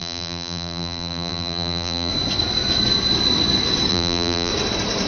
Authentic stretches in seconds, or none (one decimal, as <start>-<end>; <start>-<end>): 2.1-3.9; 4.5-5.1